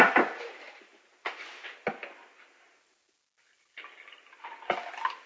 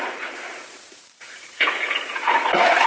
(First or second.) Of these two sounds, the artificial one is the second